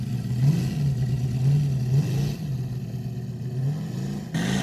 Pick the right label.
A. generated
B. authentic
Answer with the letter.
B